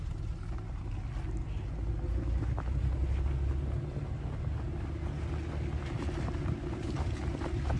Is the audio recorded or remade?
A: recorded